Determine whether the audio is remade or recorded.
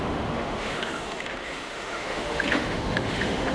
remade